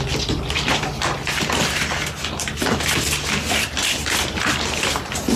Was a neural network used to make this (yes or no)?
no